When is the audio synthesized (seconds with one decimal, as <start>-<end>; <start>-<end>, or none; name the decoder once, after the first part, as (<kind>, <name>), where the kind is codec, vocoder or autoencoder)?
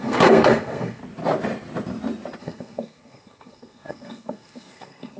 0.0-1.0 (codec, SNAC); 2.4-5.2